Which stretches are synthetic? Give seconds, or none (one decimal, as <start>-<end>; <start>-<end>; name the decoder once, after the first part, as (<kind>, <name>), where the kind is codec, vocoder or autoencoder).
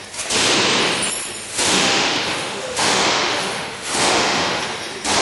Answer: 1.5-4.6 (autoencoder, DAC-VAE)